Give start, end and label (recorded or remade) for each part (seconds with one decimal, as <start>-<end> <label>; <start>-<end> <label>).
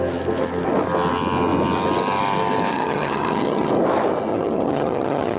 0.0-2.7 recorded; 2.7-3.7 remade; 3.7-4.3 recorded; 4.3-5.4 remade